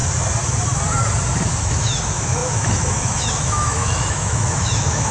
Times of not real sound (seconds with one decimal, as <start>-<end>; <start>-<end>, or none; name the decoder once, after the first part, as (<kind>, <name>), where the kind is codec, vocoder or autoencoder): 1.6-5.1 (autoencoder, DAC-VAE)